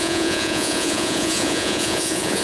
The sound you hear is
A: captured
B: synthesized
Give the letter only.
B